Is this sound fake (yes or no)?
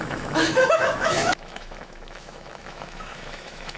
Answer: yes